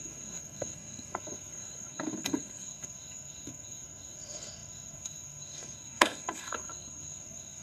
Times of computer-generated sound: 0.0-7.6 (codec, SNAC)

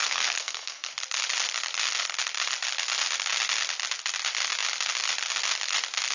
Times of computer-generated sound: 0.0-0.9 (codec, SNAC)

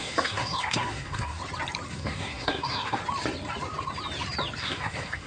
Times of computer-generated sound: 0.0-1.4 (codec, SNAC); 1.9-3.0; 4.6-5.3

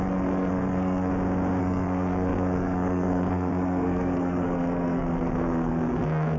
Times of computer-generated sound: 0.0-1.1 (codec, SNAC); 1.6-6.4

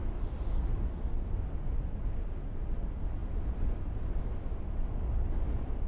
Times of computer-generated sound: none

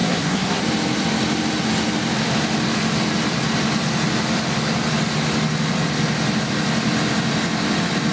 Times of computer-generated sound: 0.0-0.6 (codec, SNAC)

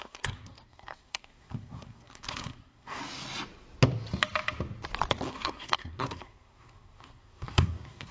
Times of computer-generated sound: 0.0-3.0 (codec, SNAC); 5.3-8.1

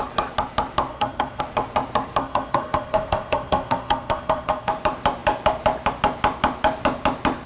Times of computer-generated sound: 0.9-1.4 (codec, SNAC); 2.2-4.7